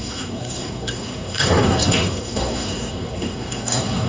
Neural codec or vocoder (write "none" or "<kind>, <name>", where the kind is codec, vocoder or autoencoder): codec, SNAC